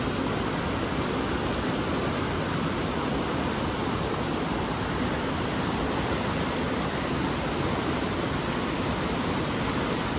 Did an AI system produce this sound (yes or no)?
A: no